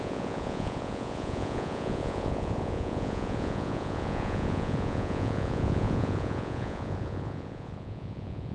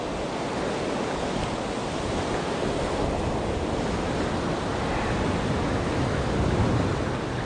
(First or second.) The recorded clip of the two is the second